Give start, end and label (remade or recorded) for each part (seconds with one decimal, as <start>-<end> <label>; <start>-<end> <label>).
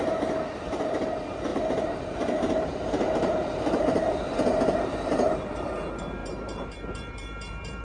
0.0-1.5 recorded; 1.5-5.7 remade; 5.7-6.2 recorded; 6.2-7.8 remade